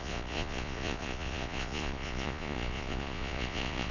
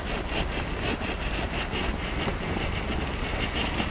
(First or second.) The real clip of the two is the second